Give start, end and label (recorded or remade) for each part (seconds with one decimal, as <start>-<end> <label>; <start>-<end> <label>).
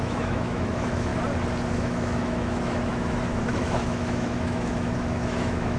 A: 0.0-1.1 remade; 1.1-1.7 recorded; 1.7-5.8 remade